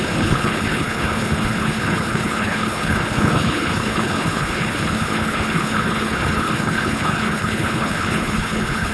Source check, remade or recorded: remade